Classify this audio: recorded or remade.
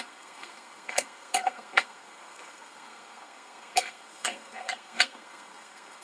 remade